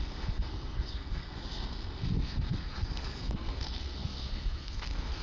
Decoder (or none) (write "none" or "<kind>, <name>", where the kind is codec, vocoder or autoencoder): codec, SNAC